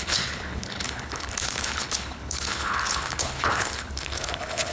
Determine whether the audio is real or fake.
fake